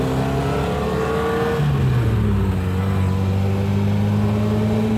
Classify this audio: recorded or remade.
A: recorded